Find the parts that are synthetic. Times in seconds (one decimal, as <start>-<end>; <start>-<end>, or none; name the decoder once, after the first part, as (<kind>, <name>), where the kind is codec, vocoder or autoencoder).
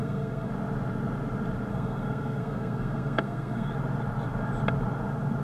0.0-0.5 (codec, SNAC); 1.7-3.7